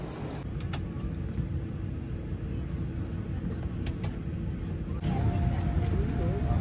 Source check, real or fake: real